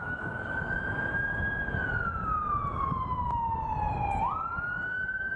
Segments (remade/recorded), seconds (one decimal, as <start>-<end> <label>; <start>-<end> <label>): 0.0-0.8 remade; 0.8-4.5 recorded; 4.5-5.4 remade

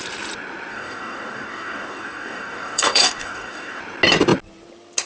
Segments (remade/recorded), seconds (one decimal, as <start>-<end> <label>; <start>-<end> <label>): 0.0-0.7 recorded; 0.7-3.8 remade; 3.8-5.1 recorded